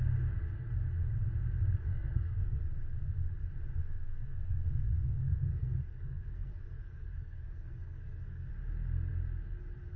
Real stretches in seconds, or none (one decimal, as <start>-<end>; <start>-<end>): 0.0-1.8; 2.6-3.8; 8.5-10.0